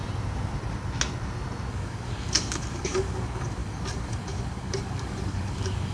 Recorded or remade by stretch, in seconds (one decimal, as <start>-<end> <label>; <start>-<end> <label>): 0.0-1.7 recorded; 1.7-5.9 remade